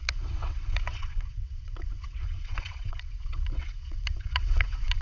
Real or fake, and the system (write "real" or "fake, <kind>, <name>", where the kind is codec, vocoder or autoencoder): fake, vocoder, WaveNeXt